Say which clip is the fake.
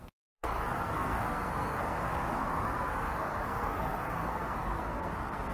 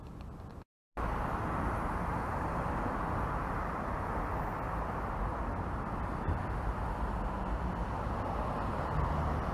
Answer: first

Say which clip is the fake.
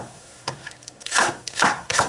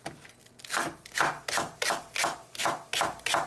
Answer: first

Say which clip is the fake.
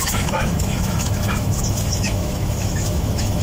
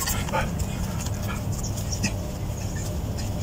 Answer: first